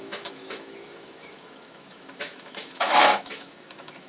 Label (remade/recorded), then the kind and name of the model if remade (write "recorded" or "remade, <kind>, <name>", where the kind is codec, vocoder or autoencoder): remade, autoencoder, DAC-VAE